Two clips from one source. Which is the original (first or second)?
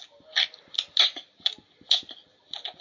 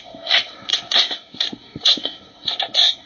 first